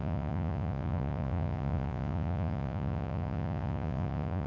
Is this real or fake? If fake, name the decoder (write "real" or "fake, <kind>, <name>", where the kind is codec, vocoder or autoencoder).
fake, vocoder, Vocos